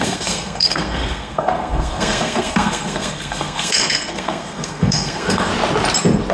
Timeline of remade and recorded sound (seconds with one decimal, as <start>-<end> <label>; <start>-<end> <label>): 0.0-5.5 remade; 5.5-6.3 recorded

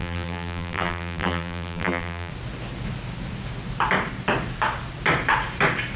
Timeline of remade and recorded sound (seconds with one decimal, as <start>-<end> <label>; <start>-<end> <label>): 0.0-2.3 remade; 2.3-6.0 recorded

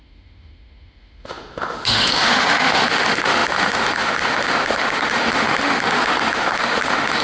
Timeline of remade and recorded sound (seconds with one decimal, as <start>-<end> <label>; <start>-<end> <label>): 0.0-7.2 remade

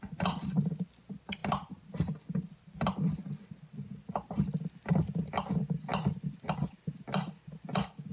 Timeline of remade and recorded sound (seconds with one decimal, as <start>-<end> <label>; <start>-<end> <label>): 0.0-8.1 recorded

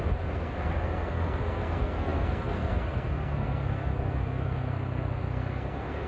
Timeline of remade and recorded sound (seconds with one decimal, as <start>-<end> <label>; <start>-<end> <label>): 0.0-6.1 remade

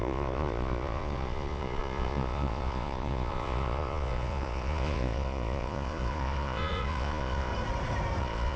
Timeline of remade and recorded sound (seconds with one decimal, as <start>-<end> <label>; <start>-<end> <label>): 0.0-7.5 remade; 7.5-8.2 recorded; 8.2-8.6 remade

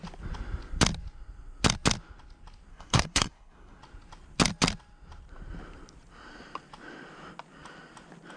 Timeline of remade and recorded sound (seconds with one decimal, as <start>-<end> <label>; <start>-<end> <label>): 0.0-2.7 recorded; 2.7-3.8 remade; 3.8-8.4 recorded

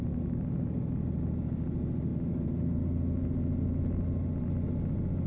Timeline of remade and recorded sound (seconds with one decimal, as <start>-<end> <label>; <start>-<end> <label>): 0.0-5.3 recorded